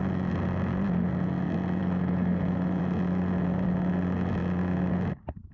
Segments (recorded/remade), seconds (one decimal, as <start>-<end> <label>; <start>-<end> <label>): 0.0-1.8 recorded; 1.8-2.8 remade; 2.8-5.5 recorded